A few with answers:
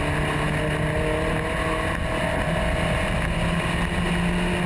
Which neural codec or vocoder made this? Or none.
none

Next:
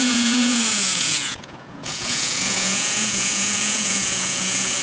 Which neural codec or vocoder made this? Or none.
vocoder, Vocos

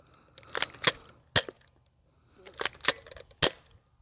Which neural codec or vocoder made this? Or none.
none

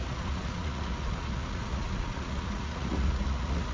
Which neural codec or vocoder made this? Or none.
vocoder, Vocos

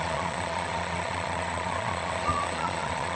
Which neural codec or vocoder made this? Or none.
vocoder, Vocos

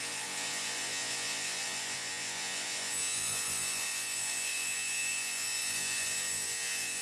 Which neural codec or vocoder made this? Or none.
vocoder, Vocos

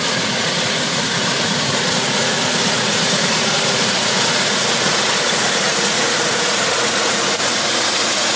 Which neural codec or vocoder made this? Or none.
vocoder, Vocos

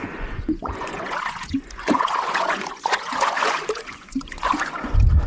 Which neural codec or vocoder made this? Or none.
vocoder, Vocos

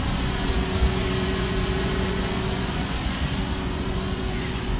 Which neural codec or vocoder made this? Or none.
vocoder, Vocos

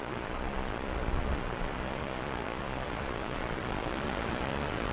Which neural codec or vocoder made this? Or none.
vocoder, Vocos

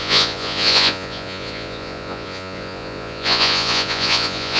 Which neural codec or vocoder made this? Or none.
vocoder, Vocos